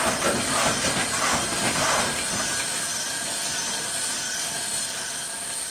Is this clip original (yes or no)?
yes